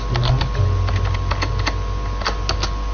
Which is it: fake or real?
real